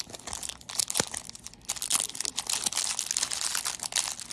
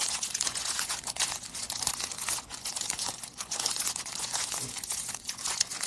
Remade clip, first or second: second